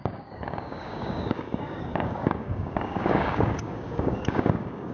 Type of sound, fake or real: fake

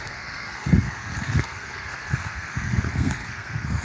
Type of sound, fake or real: fake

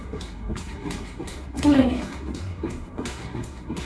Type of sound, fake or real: fake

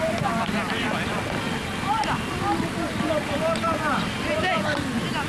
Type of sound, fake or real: real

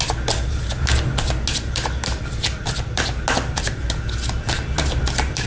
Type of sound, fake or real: real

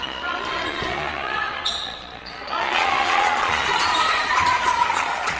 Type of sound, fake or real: fake